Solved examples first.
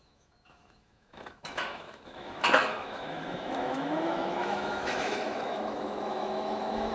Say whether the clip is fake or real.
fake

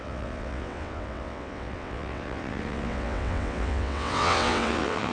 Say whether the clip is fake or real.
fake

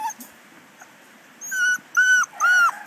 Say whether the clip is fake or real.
real